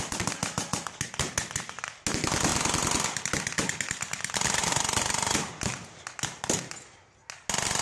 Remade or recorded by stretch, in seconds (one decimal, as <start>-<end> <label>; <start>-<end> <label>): 0.0-4.6 recorded; 4.6-5.5 remade; 5.5-7.8 recorded